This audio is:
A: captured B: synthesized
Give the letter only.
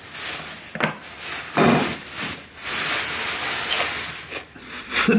A